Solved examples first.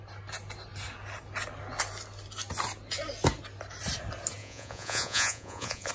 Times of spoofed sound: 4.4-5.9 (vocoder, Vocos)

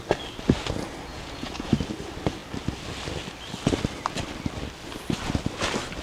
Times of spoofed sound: 1.1-1.7 (vocoder, Vocos)

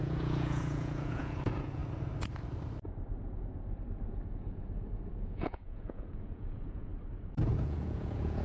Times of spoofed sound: 0.0-1.8 (vocoder, Vocos); 4.3-6.9; 7.5-8.4